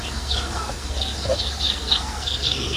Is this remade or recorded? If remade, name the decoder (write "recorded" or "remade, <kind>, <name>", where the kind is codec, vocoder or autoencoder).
remade, codec, SNAC